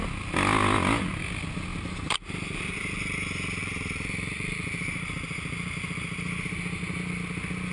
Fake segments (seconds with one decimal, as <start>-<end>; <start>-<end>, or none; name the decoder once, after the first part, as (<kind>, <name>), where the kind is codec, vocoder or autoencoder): 1.7-2.6 (vocoder, BigVGAN v2); 3.6-5.1